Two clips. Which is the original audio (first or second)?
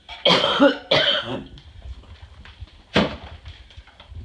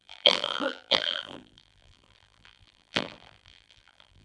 first